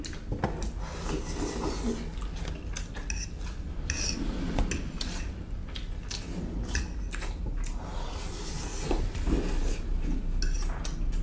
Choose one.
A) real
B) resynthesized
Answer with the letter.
A